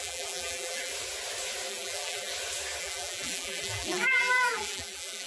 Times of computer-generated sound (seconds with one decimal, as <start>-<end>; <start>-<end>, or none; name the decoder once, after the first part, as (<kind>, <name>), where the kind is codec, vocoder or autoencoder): 0.0-0.9 (vocoder, BigVGAN v2); 1.7-2.3; 2.8-5.3